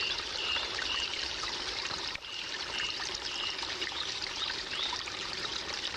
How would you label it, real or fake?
fake